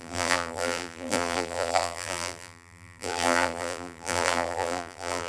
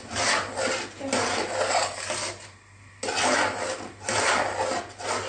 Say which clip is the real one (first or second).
second